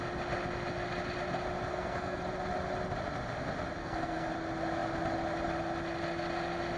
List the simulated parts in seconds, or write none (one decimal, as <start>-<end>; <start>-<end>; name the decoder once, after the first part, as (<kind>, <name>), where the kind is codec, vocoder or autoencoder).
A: 1.7-2.2 (codec, SNAC); 3.8-4.3

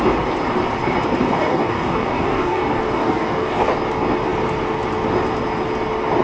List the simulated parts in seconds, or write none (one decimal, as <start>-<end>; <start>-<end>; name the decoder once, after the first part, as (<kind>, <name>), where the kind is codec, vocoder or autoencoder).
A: 1.3-3.7 (codec, DAC)

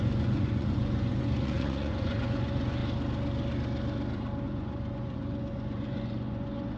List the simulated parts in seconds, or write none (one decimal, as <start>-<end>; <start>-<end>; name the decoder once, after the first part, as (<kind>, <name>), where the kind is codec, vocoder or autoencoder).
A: 0.0-2.8 (vocoder, Vocos); 4.4-6.8

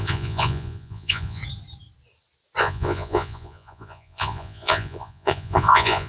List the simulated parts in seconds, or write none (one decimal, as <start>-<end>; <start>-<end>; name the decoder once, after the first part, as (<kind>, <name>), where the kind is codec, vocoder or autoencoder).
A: 0.0-1.4 (vocoder, Vocos); 2.6-6.1

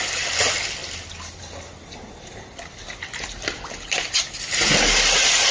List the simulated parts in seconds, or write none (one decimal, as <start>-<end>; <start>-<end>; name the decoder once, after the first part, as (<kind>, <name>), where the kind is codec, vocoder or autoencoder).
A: none

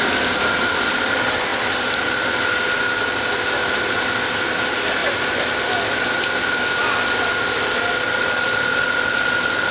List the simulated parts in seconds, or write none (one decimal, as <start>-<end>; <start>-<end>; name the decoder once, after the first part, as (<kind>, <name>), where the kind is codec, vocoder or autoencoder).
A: none

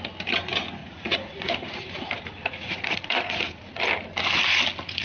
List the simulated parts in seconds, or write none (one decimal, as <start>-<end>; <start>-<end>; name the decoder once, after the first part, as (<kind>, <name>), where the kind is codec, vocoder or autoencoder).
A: 0.8-3.8 (vocoder, Vocos)